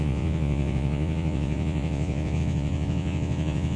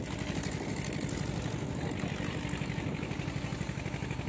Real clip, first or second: second